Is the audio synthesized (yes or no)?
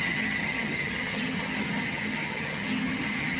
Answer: yes